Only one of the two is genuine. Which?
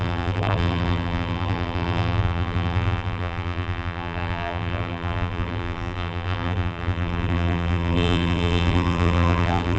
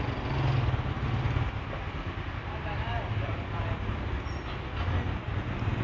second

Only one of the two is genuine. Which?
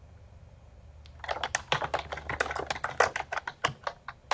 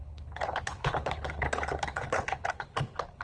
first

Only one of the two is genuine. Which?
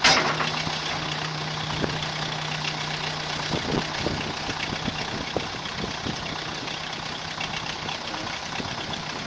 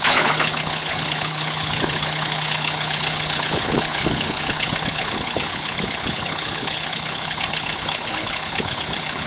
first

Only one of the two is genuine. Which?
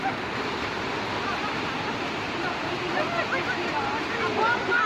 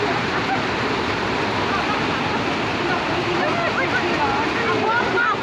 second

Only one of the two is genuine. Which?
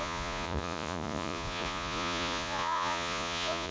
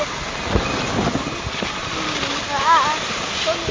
second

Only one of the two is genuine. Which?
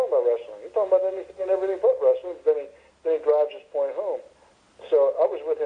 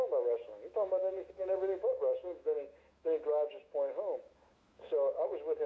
first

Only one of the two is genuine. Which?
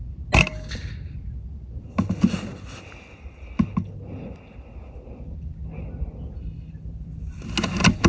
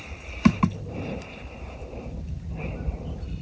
first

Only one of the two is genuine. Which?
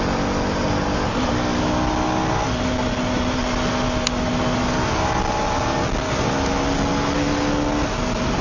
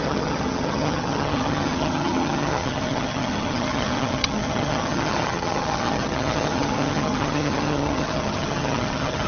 first